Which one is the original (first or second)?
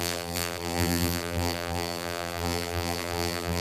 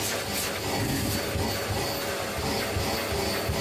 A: second